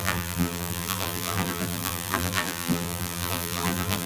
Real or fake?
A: fake